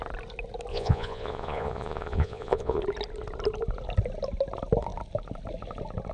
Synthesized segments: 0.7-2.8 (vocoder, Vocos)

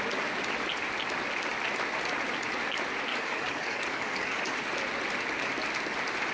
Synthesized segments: 3.1-4.4 (codec, DAC)

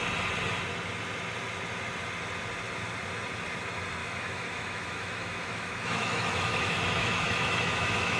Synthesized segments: 4.0-8.2 (autoencoder, DAC-VAE)

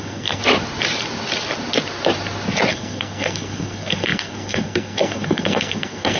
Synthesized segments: 0.0-0.4 (codec, SNAC); 2.7-6.2

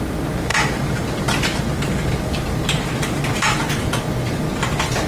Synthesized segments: 0.5-3.6 (vocoder, BigVGAN v2)

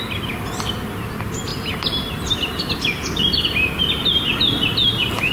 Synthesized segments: 1.5-3.8 (vocoder, BigVGAN v2)

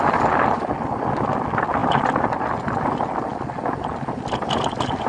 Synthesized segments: none